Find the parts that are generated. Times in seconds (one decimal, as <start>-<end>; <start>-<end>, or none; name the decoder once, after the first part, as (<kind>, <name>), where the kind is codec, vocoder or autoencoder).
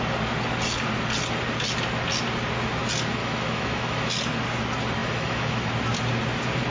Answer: 3.2-4.1 (autoencoder, DAC-VAE); 5.0-5.7